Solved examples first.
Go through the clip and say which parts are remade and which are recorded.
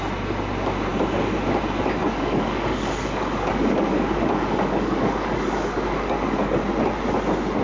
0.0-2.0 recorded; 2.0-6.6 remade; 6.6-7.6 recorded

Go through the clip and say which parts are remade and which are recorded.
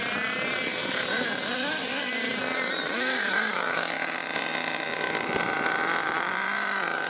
0.0-0.7 recorded; 0.7-3.7 remade; 3.7-4.5 recorded; 4.5-5.4 remade; 5.4-7.1 recorded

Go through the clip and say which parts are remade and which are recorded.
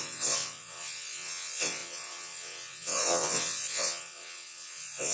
0.0-5.1 remade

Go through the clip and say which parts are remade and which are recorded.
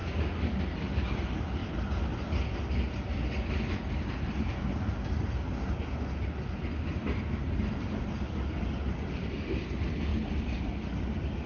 0.0-11.5 recorded